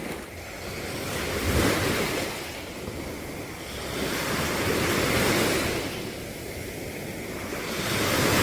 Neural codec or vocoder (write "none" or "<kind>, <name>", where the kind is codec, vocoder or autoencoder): none